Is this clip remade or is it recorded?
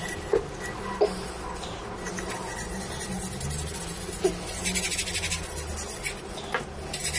recorded